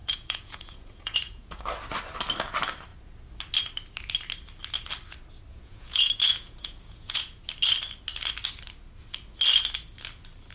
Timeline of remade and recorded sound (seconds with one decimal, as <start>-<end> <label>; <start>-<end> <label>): 0.0-1.6 remade; 1.6-5.5 recorded; 5.5-7.4 remade; 7.4-10.5 recorded